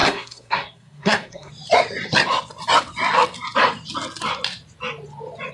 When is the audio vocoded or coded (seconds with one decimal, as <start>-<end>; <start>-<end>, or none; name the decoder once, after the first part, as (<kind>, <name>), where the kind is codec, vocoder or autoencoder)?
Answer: 0.0-1.5 (codec, SNAC)

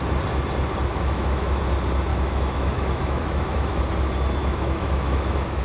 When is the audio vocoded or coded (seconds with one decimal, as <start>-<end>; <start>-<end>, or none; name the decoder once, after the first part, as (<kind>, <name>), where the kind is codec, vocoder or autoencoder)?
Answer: 0.9-1.6 (autoencoder, DAC-VAE); 2.1-3.8; 4.4-5.6

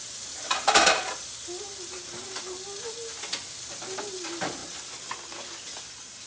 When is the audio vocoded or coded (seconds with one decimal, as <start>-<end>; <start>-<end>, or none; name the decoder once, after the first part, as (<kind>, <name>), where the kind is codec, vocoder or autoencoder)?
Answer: none

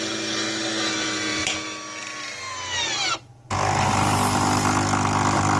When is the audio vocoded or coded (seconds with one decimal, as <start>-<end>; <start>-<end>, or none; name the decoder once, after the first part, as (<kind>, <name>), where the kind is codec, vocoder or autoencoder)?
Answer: none

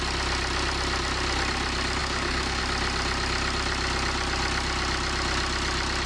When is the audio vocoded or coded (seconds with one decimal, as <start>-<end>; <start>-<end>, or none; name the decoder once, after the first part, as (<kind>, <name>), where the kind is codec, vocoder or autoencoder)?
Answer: 2.0-2.6 (codec, DAC)

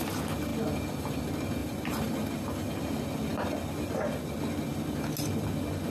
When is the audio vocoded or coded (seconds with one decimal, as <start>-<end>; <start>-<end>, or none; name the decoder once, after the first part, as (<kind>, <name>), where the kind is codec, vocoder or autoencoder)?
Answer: 1.6-2.7 (vocoder, BigVGAN v2)